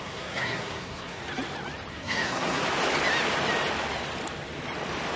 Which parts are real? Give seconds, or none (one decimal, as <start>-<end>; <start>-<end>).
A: 1.2-1.9; 2.6-5.2